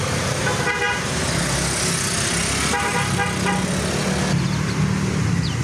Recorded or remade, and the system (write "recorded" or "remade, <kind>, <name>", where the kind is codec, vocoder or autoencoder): recorded